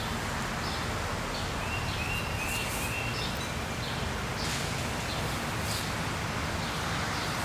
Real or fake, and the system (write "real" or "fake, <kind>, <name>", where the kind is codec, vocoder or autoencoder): real